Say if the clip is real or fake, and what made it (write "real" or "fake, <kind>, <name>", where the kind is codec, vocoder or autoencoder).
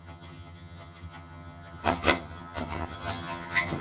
fake, vocoder, HiFi-GAN